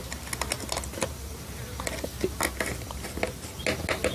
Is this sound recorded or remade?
recorded